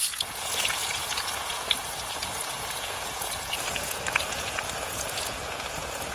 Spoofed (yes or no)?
yes